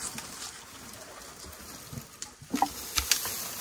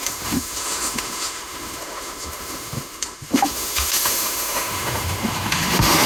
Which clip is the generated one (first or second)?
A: second